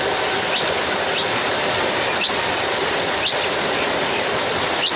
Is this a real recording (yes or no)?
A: yes